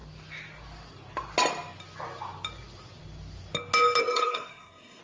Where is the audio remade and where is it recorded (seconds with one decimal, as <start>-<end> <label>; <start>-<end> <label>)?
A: 0.0-4.0 recorded; 4.0-5.0 remade